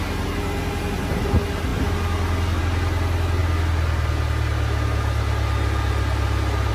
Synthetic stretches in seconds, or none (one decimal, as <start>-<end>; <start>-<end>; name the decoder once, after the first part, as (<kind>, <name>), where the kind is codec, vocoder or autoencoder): none